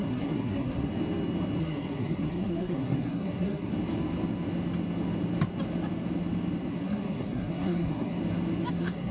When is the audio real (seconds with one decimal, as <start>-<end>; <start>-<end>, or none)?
0.9-1.6; 3.7-6.7; 8.2-8.7